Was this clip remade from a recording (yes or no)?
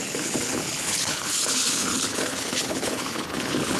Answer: yes